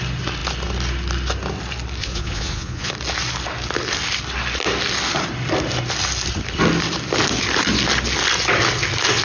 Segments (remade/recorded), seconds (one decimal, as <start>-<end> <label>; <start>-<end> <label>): 0.0-2.0 recorded; 2.0-2.9 remade; 2.9-9.2 recorded